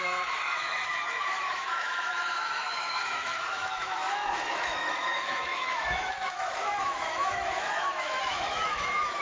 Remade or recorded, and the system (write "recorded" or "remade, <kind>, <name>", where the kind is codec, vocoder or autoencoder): remade, autoencoder, DAC-VAE